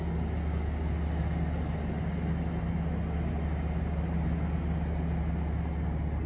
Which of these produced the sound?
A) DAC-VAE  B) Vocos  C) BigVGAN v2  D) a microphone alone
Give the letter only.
D